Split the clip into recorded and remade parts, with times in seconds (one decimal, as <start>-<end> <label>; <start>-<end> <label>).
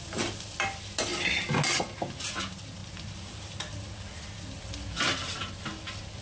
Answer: 0.0-6.2 recorded